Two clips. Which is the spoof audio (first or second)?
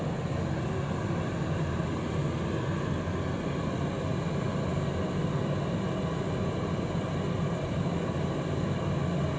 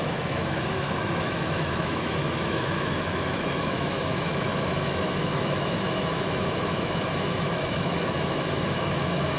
second